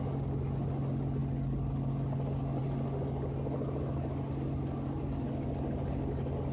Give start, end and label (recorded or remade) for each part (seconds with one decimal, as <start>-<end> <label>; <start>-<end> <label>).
0.0-6.5 recorded